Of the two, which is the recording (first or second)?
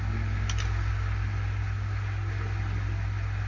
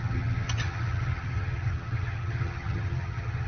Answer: first